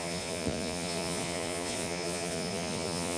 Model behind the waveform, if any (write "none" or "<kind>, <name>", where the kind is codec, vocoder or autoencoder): vocoder, Vocos